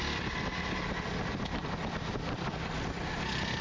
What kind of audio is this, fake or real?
real